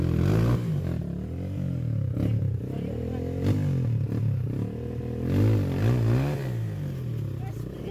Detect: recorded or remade recorded